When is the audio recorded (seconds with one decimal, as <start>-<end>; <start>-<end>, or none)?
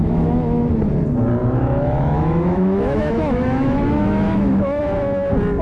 0.7-1.4; 4.8-5.6